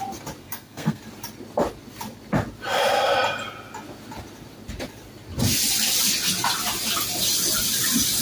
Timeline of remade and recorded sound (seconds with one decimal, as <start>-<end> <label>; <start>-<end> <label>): 0.0-0.4 recorded; 0.4-1.0 remade; 1.0-8.2 recorded